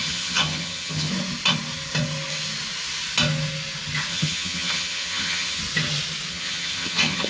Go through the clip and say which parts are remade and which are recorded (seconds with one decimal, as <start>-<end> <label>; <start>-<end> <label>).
0.0-1.1 remade; 1.1-4.1 recorded; 4.1-5.6 remade; 5.6-6.3 recorded; 6.3-7.3 remade